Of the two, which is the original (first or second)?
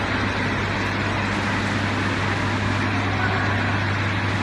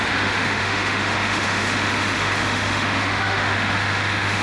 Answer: first